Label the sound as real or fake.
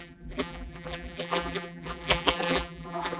fake